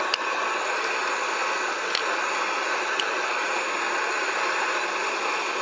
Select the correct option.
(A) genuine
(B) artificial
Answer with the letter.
A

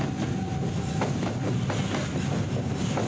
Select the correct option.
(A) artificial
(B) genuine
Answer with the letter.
B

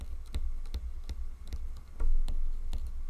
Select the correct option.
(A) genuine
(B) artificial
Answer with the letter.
A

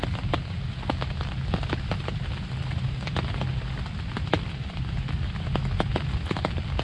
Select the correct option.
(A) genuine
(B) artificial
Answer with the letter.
A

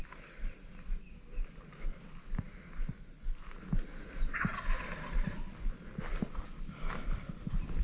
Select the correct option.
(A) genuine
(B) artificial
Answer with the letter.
A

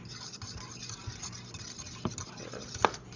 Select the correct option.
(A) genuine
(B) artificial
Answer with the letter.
A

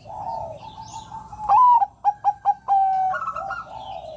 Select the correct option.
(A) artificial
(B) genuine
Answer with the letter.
B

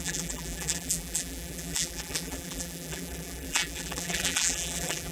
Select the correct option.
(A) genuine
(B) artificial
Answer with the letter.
B